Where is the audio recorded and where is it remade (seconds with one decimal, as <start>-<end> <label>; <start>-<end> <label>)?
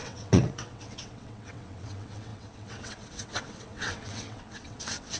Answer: 0.0-5.2 remade